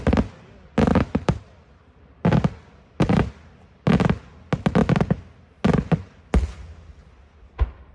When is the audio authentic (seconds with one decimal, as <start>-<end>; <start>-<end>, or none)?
0.0-0.9; 2.0-7.9